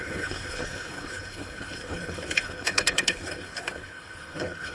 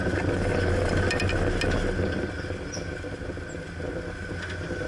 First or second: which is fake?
first